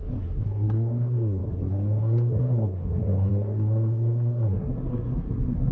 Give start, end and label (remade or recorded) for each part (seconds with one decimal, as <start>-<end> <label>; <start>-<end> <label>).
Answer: 0.0-5.7 remade